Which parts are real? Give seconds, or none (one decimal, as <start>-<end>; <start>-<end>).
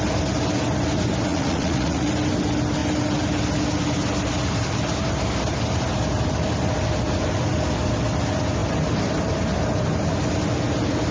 0.0-1.3; 2.1-11.1